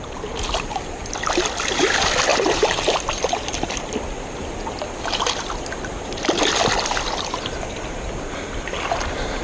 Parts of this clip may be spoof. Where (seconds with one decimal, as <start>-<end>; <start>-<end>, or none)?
none